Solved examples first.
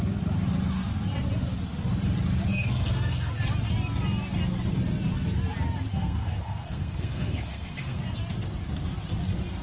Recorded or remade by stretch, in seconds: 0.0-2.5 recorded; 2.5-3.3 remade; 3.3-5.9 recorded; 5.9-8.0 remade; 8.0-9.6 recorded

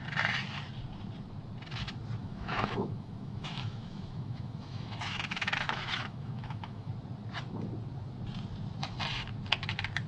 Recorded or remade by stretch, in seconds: 0.0-2.2 recorded; 2.2-6.9 remade; 6.9-10.1 recorded